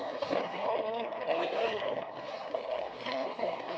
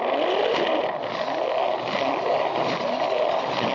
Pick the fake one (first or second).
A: first